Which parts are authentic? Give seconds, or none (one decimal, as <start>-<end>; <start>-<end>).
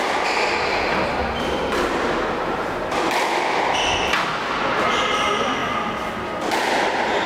0.0-7.3